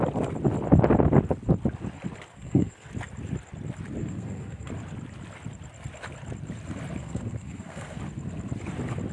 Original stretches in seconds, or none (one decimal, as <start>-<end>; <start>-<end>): 0.0-2.3; 2.9-4.0; 4.7-7.0; 8.0-9.1